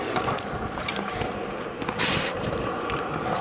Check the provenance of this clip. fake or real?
real